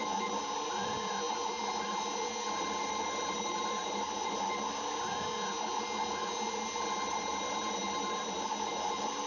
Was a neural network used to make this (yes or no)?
no